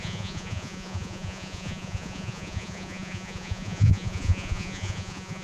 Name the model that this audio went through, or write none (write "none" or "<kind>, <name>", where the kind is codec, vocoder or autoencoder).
vocoder, Vocos